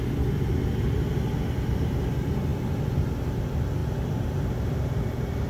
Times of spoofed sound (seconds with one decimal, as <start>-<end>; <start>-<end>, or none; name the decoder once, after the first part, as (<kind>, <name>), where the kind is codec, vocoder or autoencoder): none